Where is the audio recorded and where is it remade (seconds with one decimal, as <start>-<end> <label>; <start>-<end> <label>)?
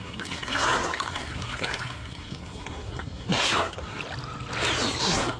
0.0-4.0 remade; 4.0-5.0 recorded; 5.0-5.4 remade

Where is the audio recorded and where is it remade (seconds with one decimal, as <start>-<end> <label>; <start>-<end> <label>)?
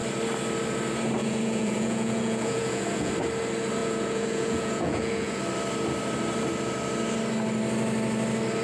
0.0-1.2 recorded; 1.2-3.1 remade; 3.1-3.8 recorded; 3.8-5.4 remade; 5.4-8.6 recorded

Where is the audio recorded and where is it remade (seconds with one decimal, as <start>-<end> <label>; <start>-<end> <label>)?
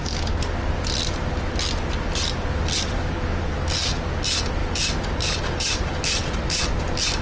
0.0-7.2 recorded